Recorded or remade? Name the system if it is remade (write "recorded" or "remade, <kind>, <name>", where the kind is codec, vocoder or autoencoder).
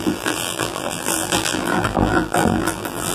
remade, vocoder, BigVGAN v2